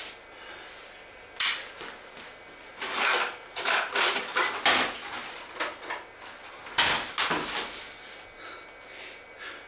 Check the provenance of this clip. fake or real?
real